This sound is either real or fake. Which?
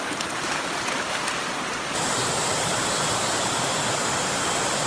fake